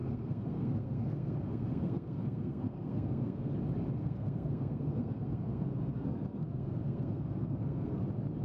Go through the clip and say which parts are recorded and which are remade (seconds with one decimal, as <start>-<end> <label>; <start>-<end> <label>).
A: 0.0-3.5 remade; 3.5-4.0 recorded; 4.0-8.0 remade; 8.0-8.4 recorded